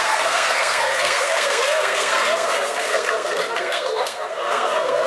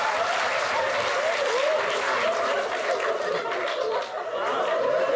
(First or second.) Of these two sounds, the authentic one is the second